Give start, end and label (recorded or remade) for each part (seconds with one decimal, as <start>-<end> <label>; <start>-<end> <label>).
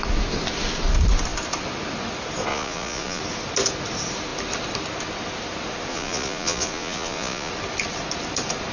0.0-2.5 recorded; 2.5-3.2 remade; 3.2-5.9 recorded; 5.9-7.5 remade; 7.5-8.7 recorded